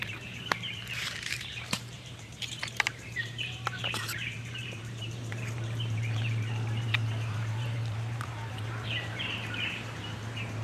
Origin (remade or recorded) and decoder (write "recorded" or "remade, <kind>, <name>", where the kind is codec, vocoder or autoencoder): remade, vocoder, BigVGAN v2